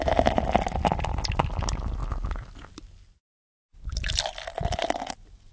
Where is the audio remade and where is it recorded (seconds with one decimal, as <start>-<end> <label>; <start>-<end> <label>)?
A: 0.0-5.5 recorded